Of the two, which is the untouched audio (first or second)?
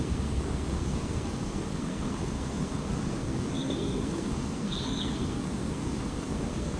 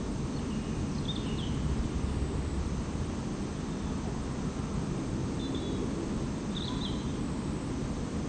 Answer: second